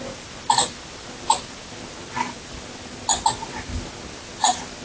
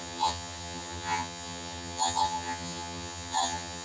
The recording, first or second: first